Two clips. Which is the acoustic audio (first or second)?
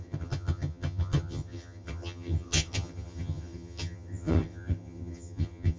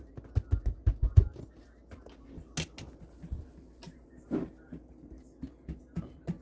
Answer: second